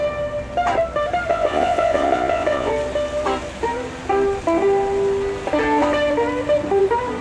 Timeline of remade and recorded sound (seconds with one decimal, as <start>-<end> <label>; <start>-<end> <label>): 0.0-1.3 recorded; 1.3-2.7 remade; 2.7-7.2 recorded